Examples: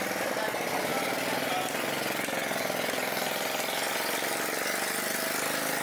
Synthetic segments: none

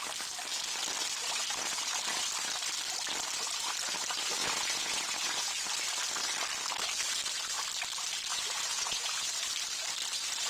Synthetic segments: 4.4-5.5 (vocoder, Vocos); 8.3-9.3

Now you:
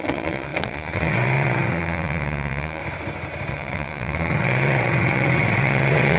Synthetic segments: 0.0-2.8 (vocoder, WaveNeXt); 3.5-6.2